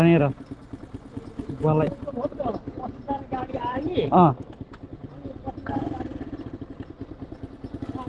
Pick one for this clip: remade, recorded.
recorded